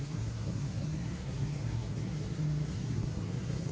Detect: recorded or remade remade